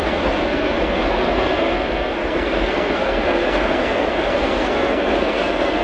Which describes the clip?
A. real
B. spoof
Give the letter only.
B